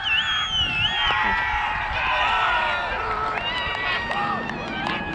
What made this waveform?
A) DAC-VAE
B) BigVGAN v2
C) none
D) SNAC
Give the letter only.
C